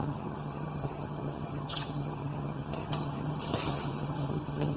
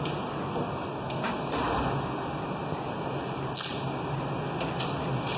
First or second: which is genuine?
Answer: second